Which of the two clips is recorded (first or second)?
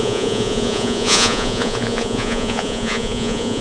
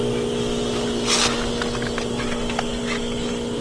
second